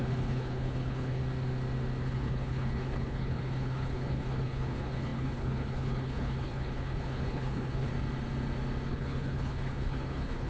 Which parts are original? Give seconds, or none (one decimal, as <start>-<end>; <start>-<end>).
1.2-2.0; 7.9-8.9